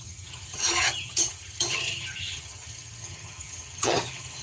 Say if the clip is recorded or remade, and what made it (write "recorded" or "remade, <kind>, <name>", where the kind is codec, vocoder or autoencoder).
remade, vocoder, HiFi-GAN